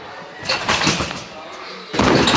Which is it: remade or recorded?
recorded